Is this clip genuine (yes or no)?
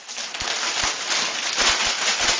no